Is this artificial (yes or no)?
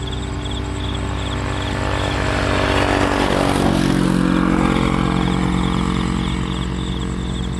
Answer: no